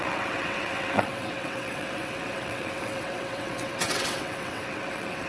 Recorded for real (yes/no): no